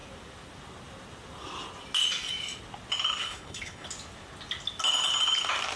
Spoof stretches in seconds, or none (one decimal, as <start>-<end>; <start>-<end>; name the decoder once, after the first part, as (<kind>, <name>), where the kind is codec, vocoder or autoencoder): 3.2-3.9 (codec, HILCodec)